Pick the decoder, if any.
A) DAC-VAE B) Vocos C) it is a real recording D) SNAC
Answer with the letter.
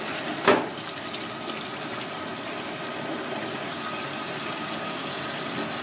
C